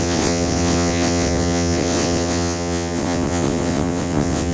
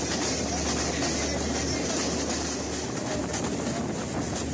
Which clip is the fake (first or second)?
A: first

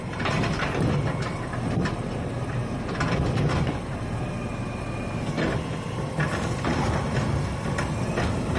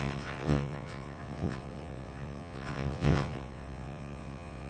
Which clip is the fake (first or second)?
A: second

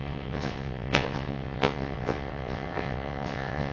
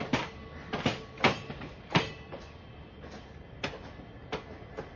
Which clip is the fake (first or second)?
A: first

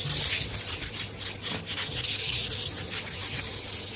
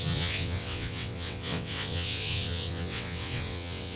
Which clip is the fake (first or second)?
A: second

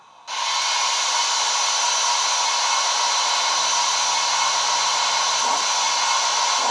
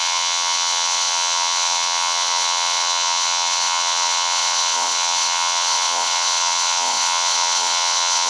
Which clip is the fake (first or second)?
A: second